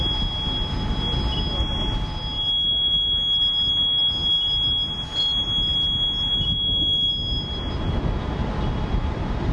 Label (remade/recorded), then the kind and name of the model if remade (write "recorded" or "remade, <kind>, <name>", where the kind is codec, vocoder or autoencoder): recorded